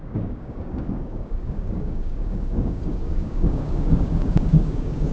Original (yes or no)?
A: no